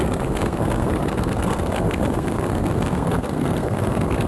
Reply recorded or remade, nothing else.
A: remade